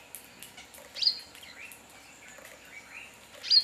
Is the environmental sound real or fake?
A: real